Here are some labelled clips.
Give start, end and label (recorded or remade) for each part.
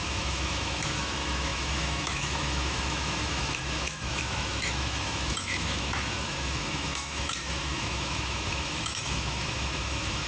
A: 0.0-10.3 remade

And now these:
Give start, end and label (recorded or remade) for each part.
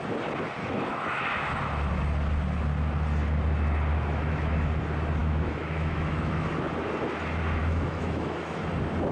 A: 0.0-0.6 recorded; 0.6-1.5 remade; 1.5-3.9 recorded; 3.9-4.7 remade; 4.7-5.2 recorded; 5.2-6.5 remade; 6.5-7.6 recorded; 7.6-8.6 remade; 8.6-9.1 recorded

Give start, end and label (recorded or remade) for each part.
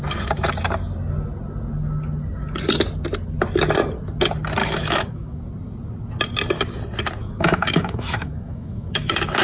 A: 0.0-4.6 recorded; 4.6-5.4 remade; 5.4-7.2 recorded; 7.2-9.4 remade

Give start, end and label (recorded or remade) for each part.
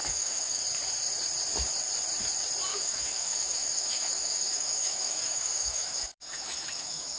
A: 0.0-0.6 remade; 0.6-2.7 recorded; 2.7-7.2 remade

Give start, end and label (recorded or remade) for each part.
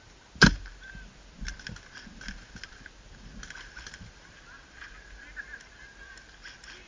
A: 0.0-6.9 recorded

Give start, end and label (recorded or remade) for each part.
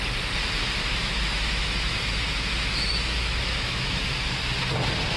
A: 0.0-0.8 recorded; 0.8-3.9 remade; 3.9-5.2 recorded